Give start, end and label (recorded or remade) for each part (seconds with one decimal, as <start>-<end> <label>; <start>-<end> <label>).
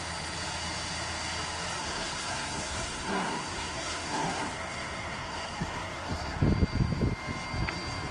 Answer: 0.0-1.8 recorded; 1.8-6.4 remade; 6.4-8.1 recorded